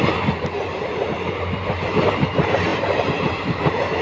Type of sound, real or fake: fake